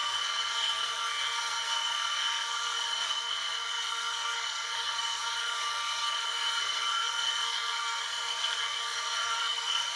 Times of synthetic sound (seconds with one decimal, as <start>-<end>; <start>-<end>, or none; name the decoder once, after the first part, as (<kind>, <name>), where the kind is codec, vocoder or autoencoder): 0.0-10.0 (codec, SNAC)